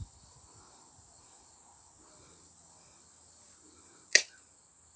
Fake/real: real